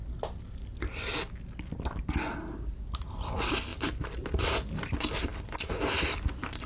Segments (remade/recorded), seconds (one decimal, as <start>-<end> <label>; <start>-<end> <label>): 0.0-3.7 recorded; 3.7-4.8 remade; 4.8-5.3 recorded; 5.3-6.7 remade